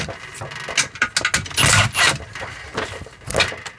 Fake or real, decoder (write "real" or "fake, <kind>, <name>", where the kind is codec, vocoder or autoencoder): real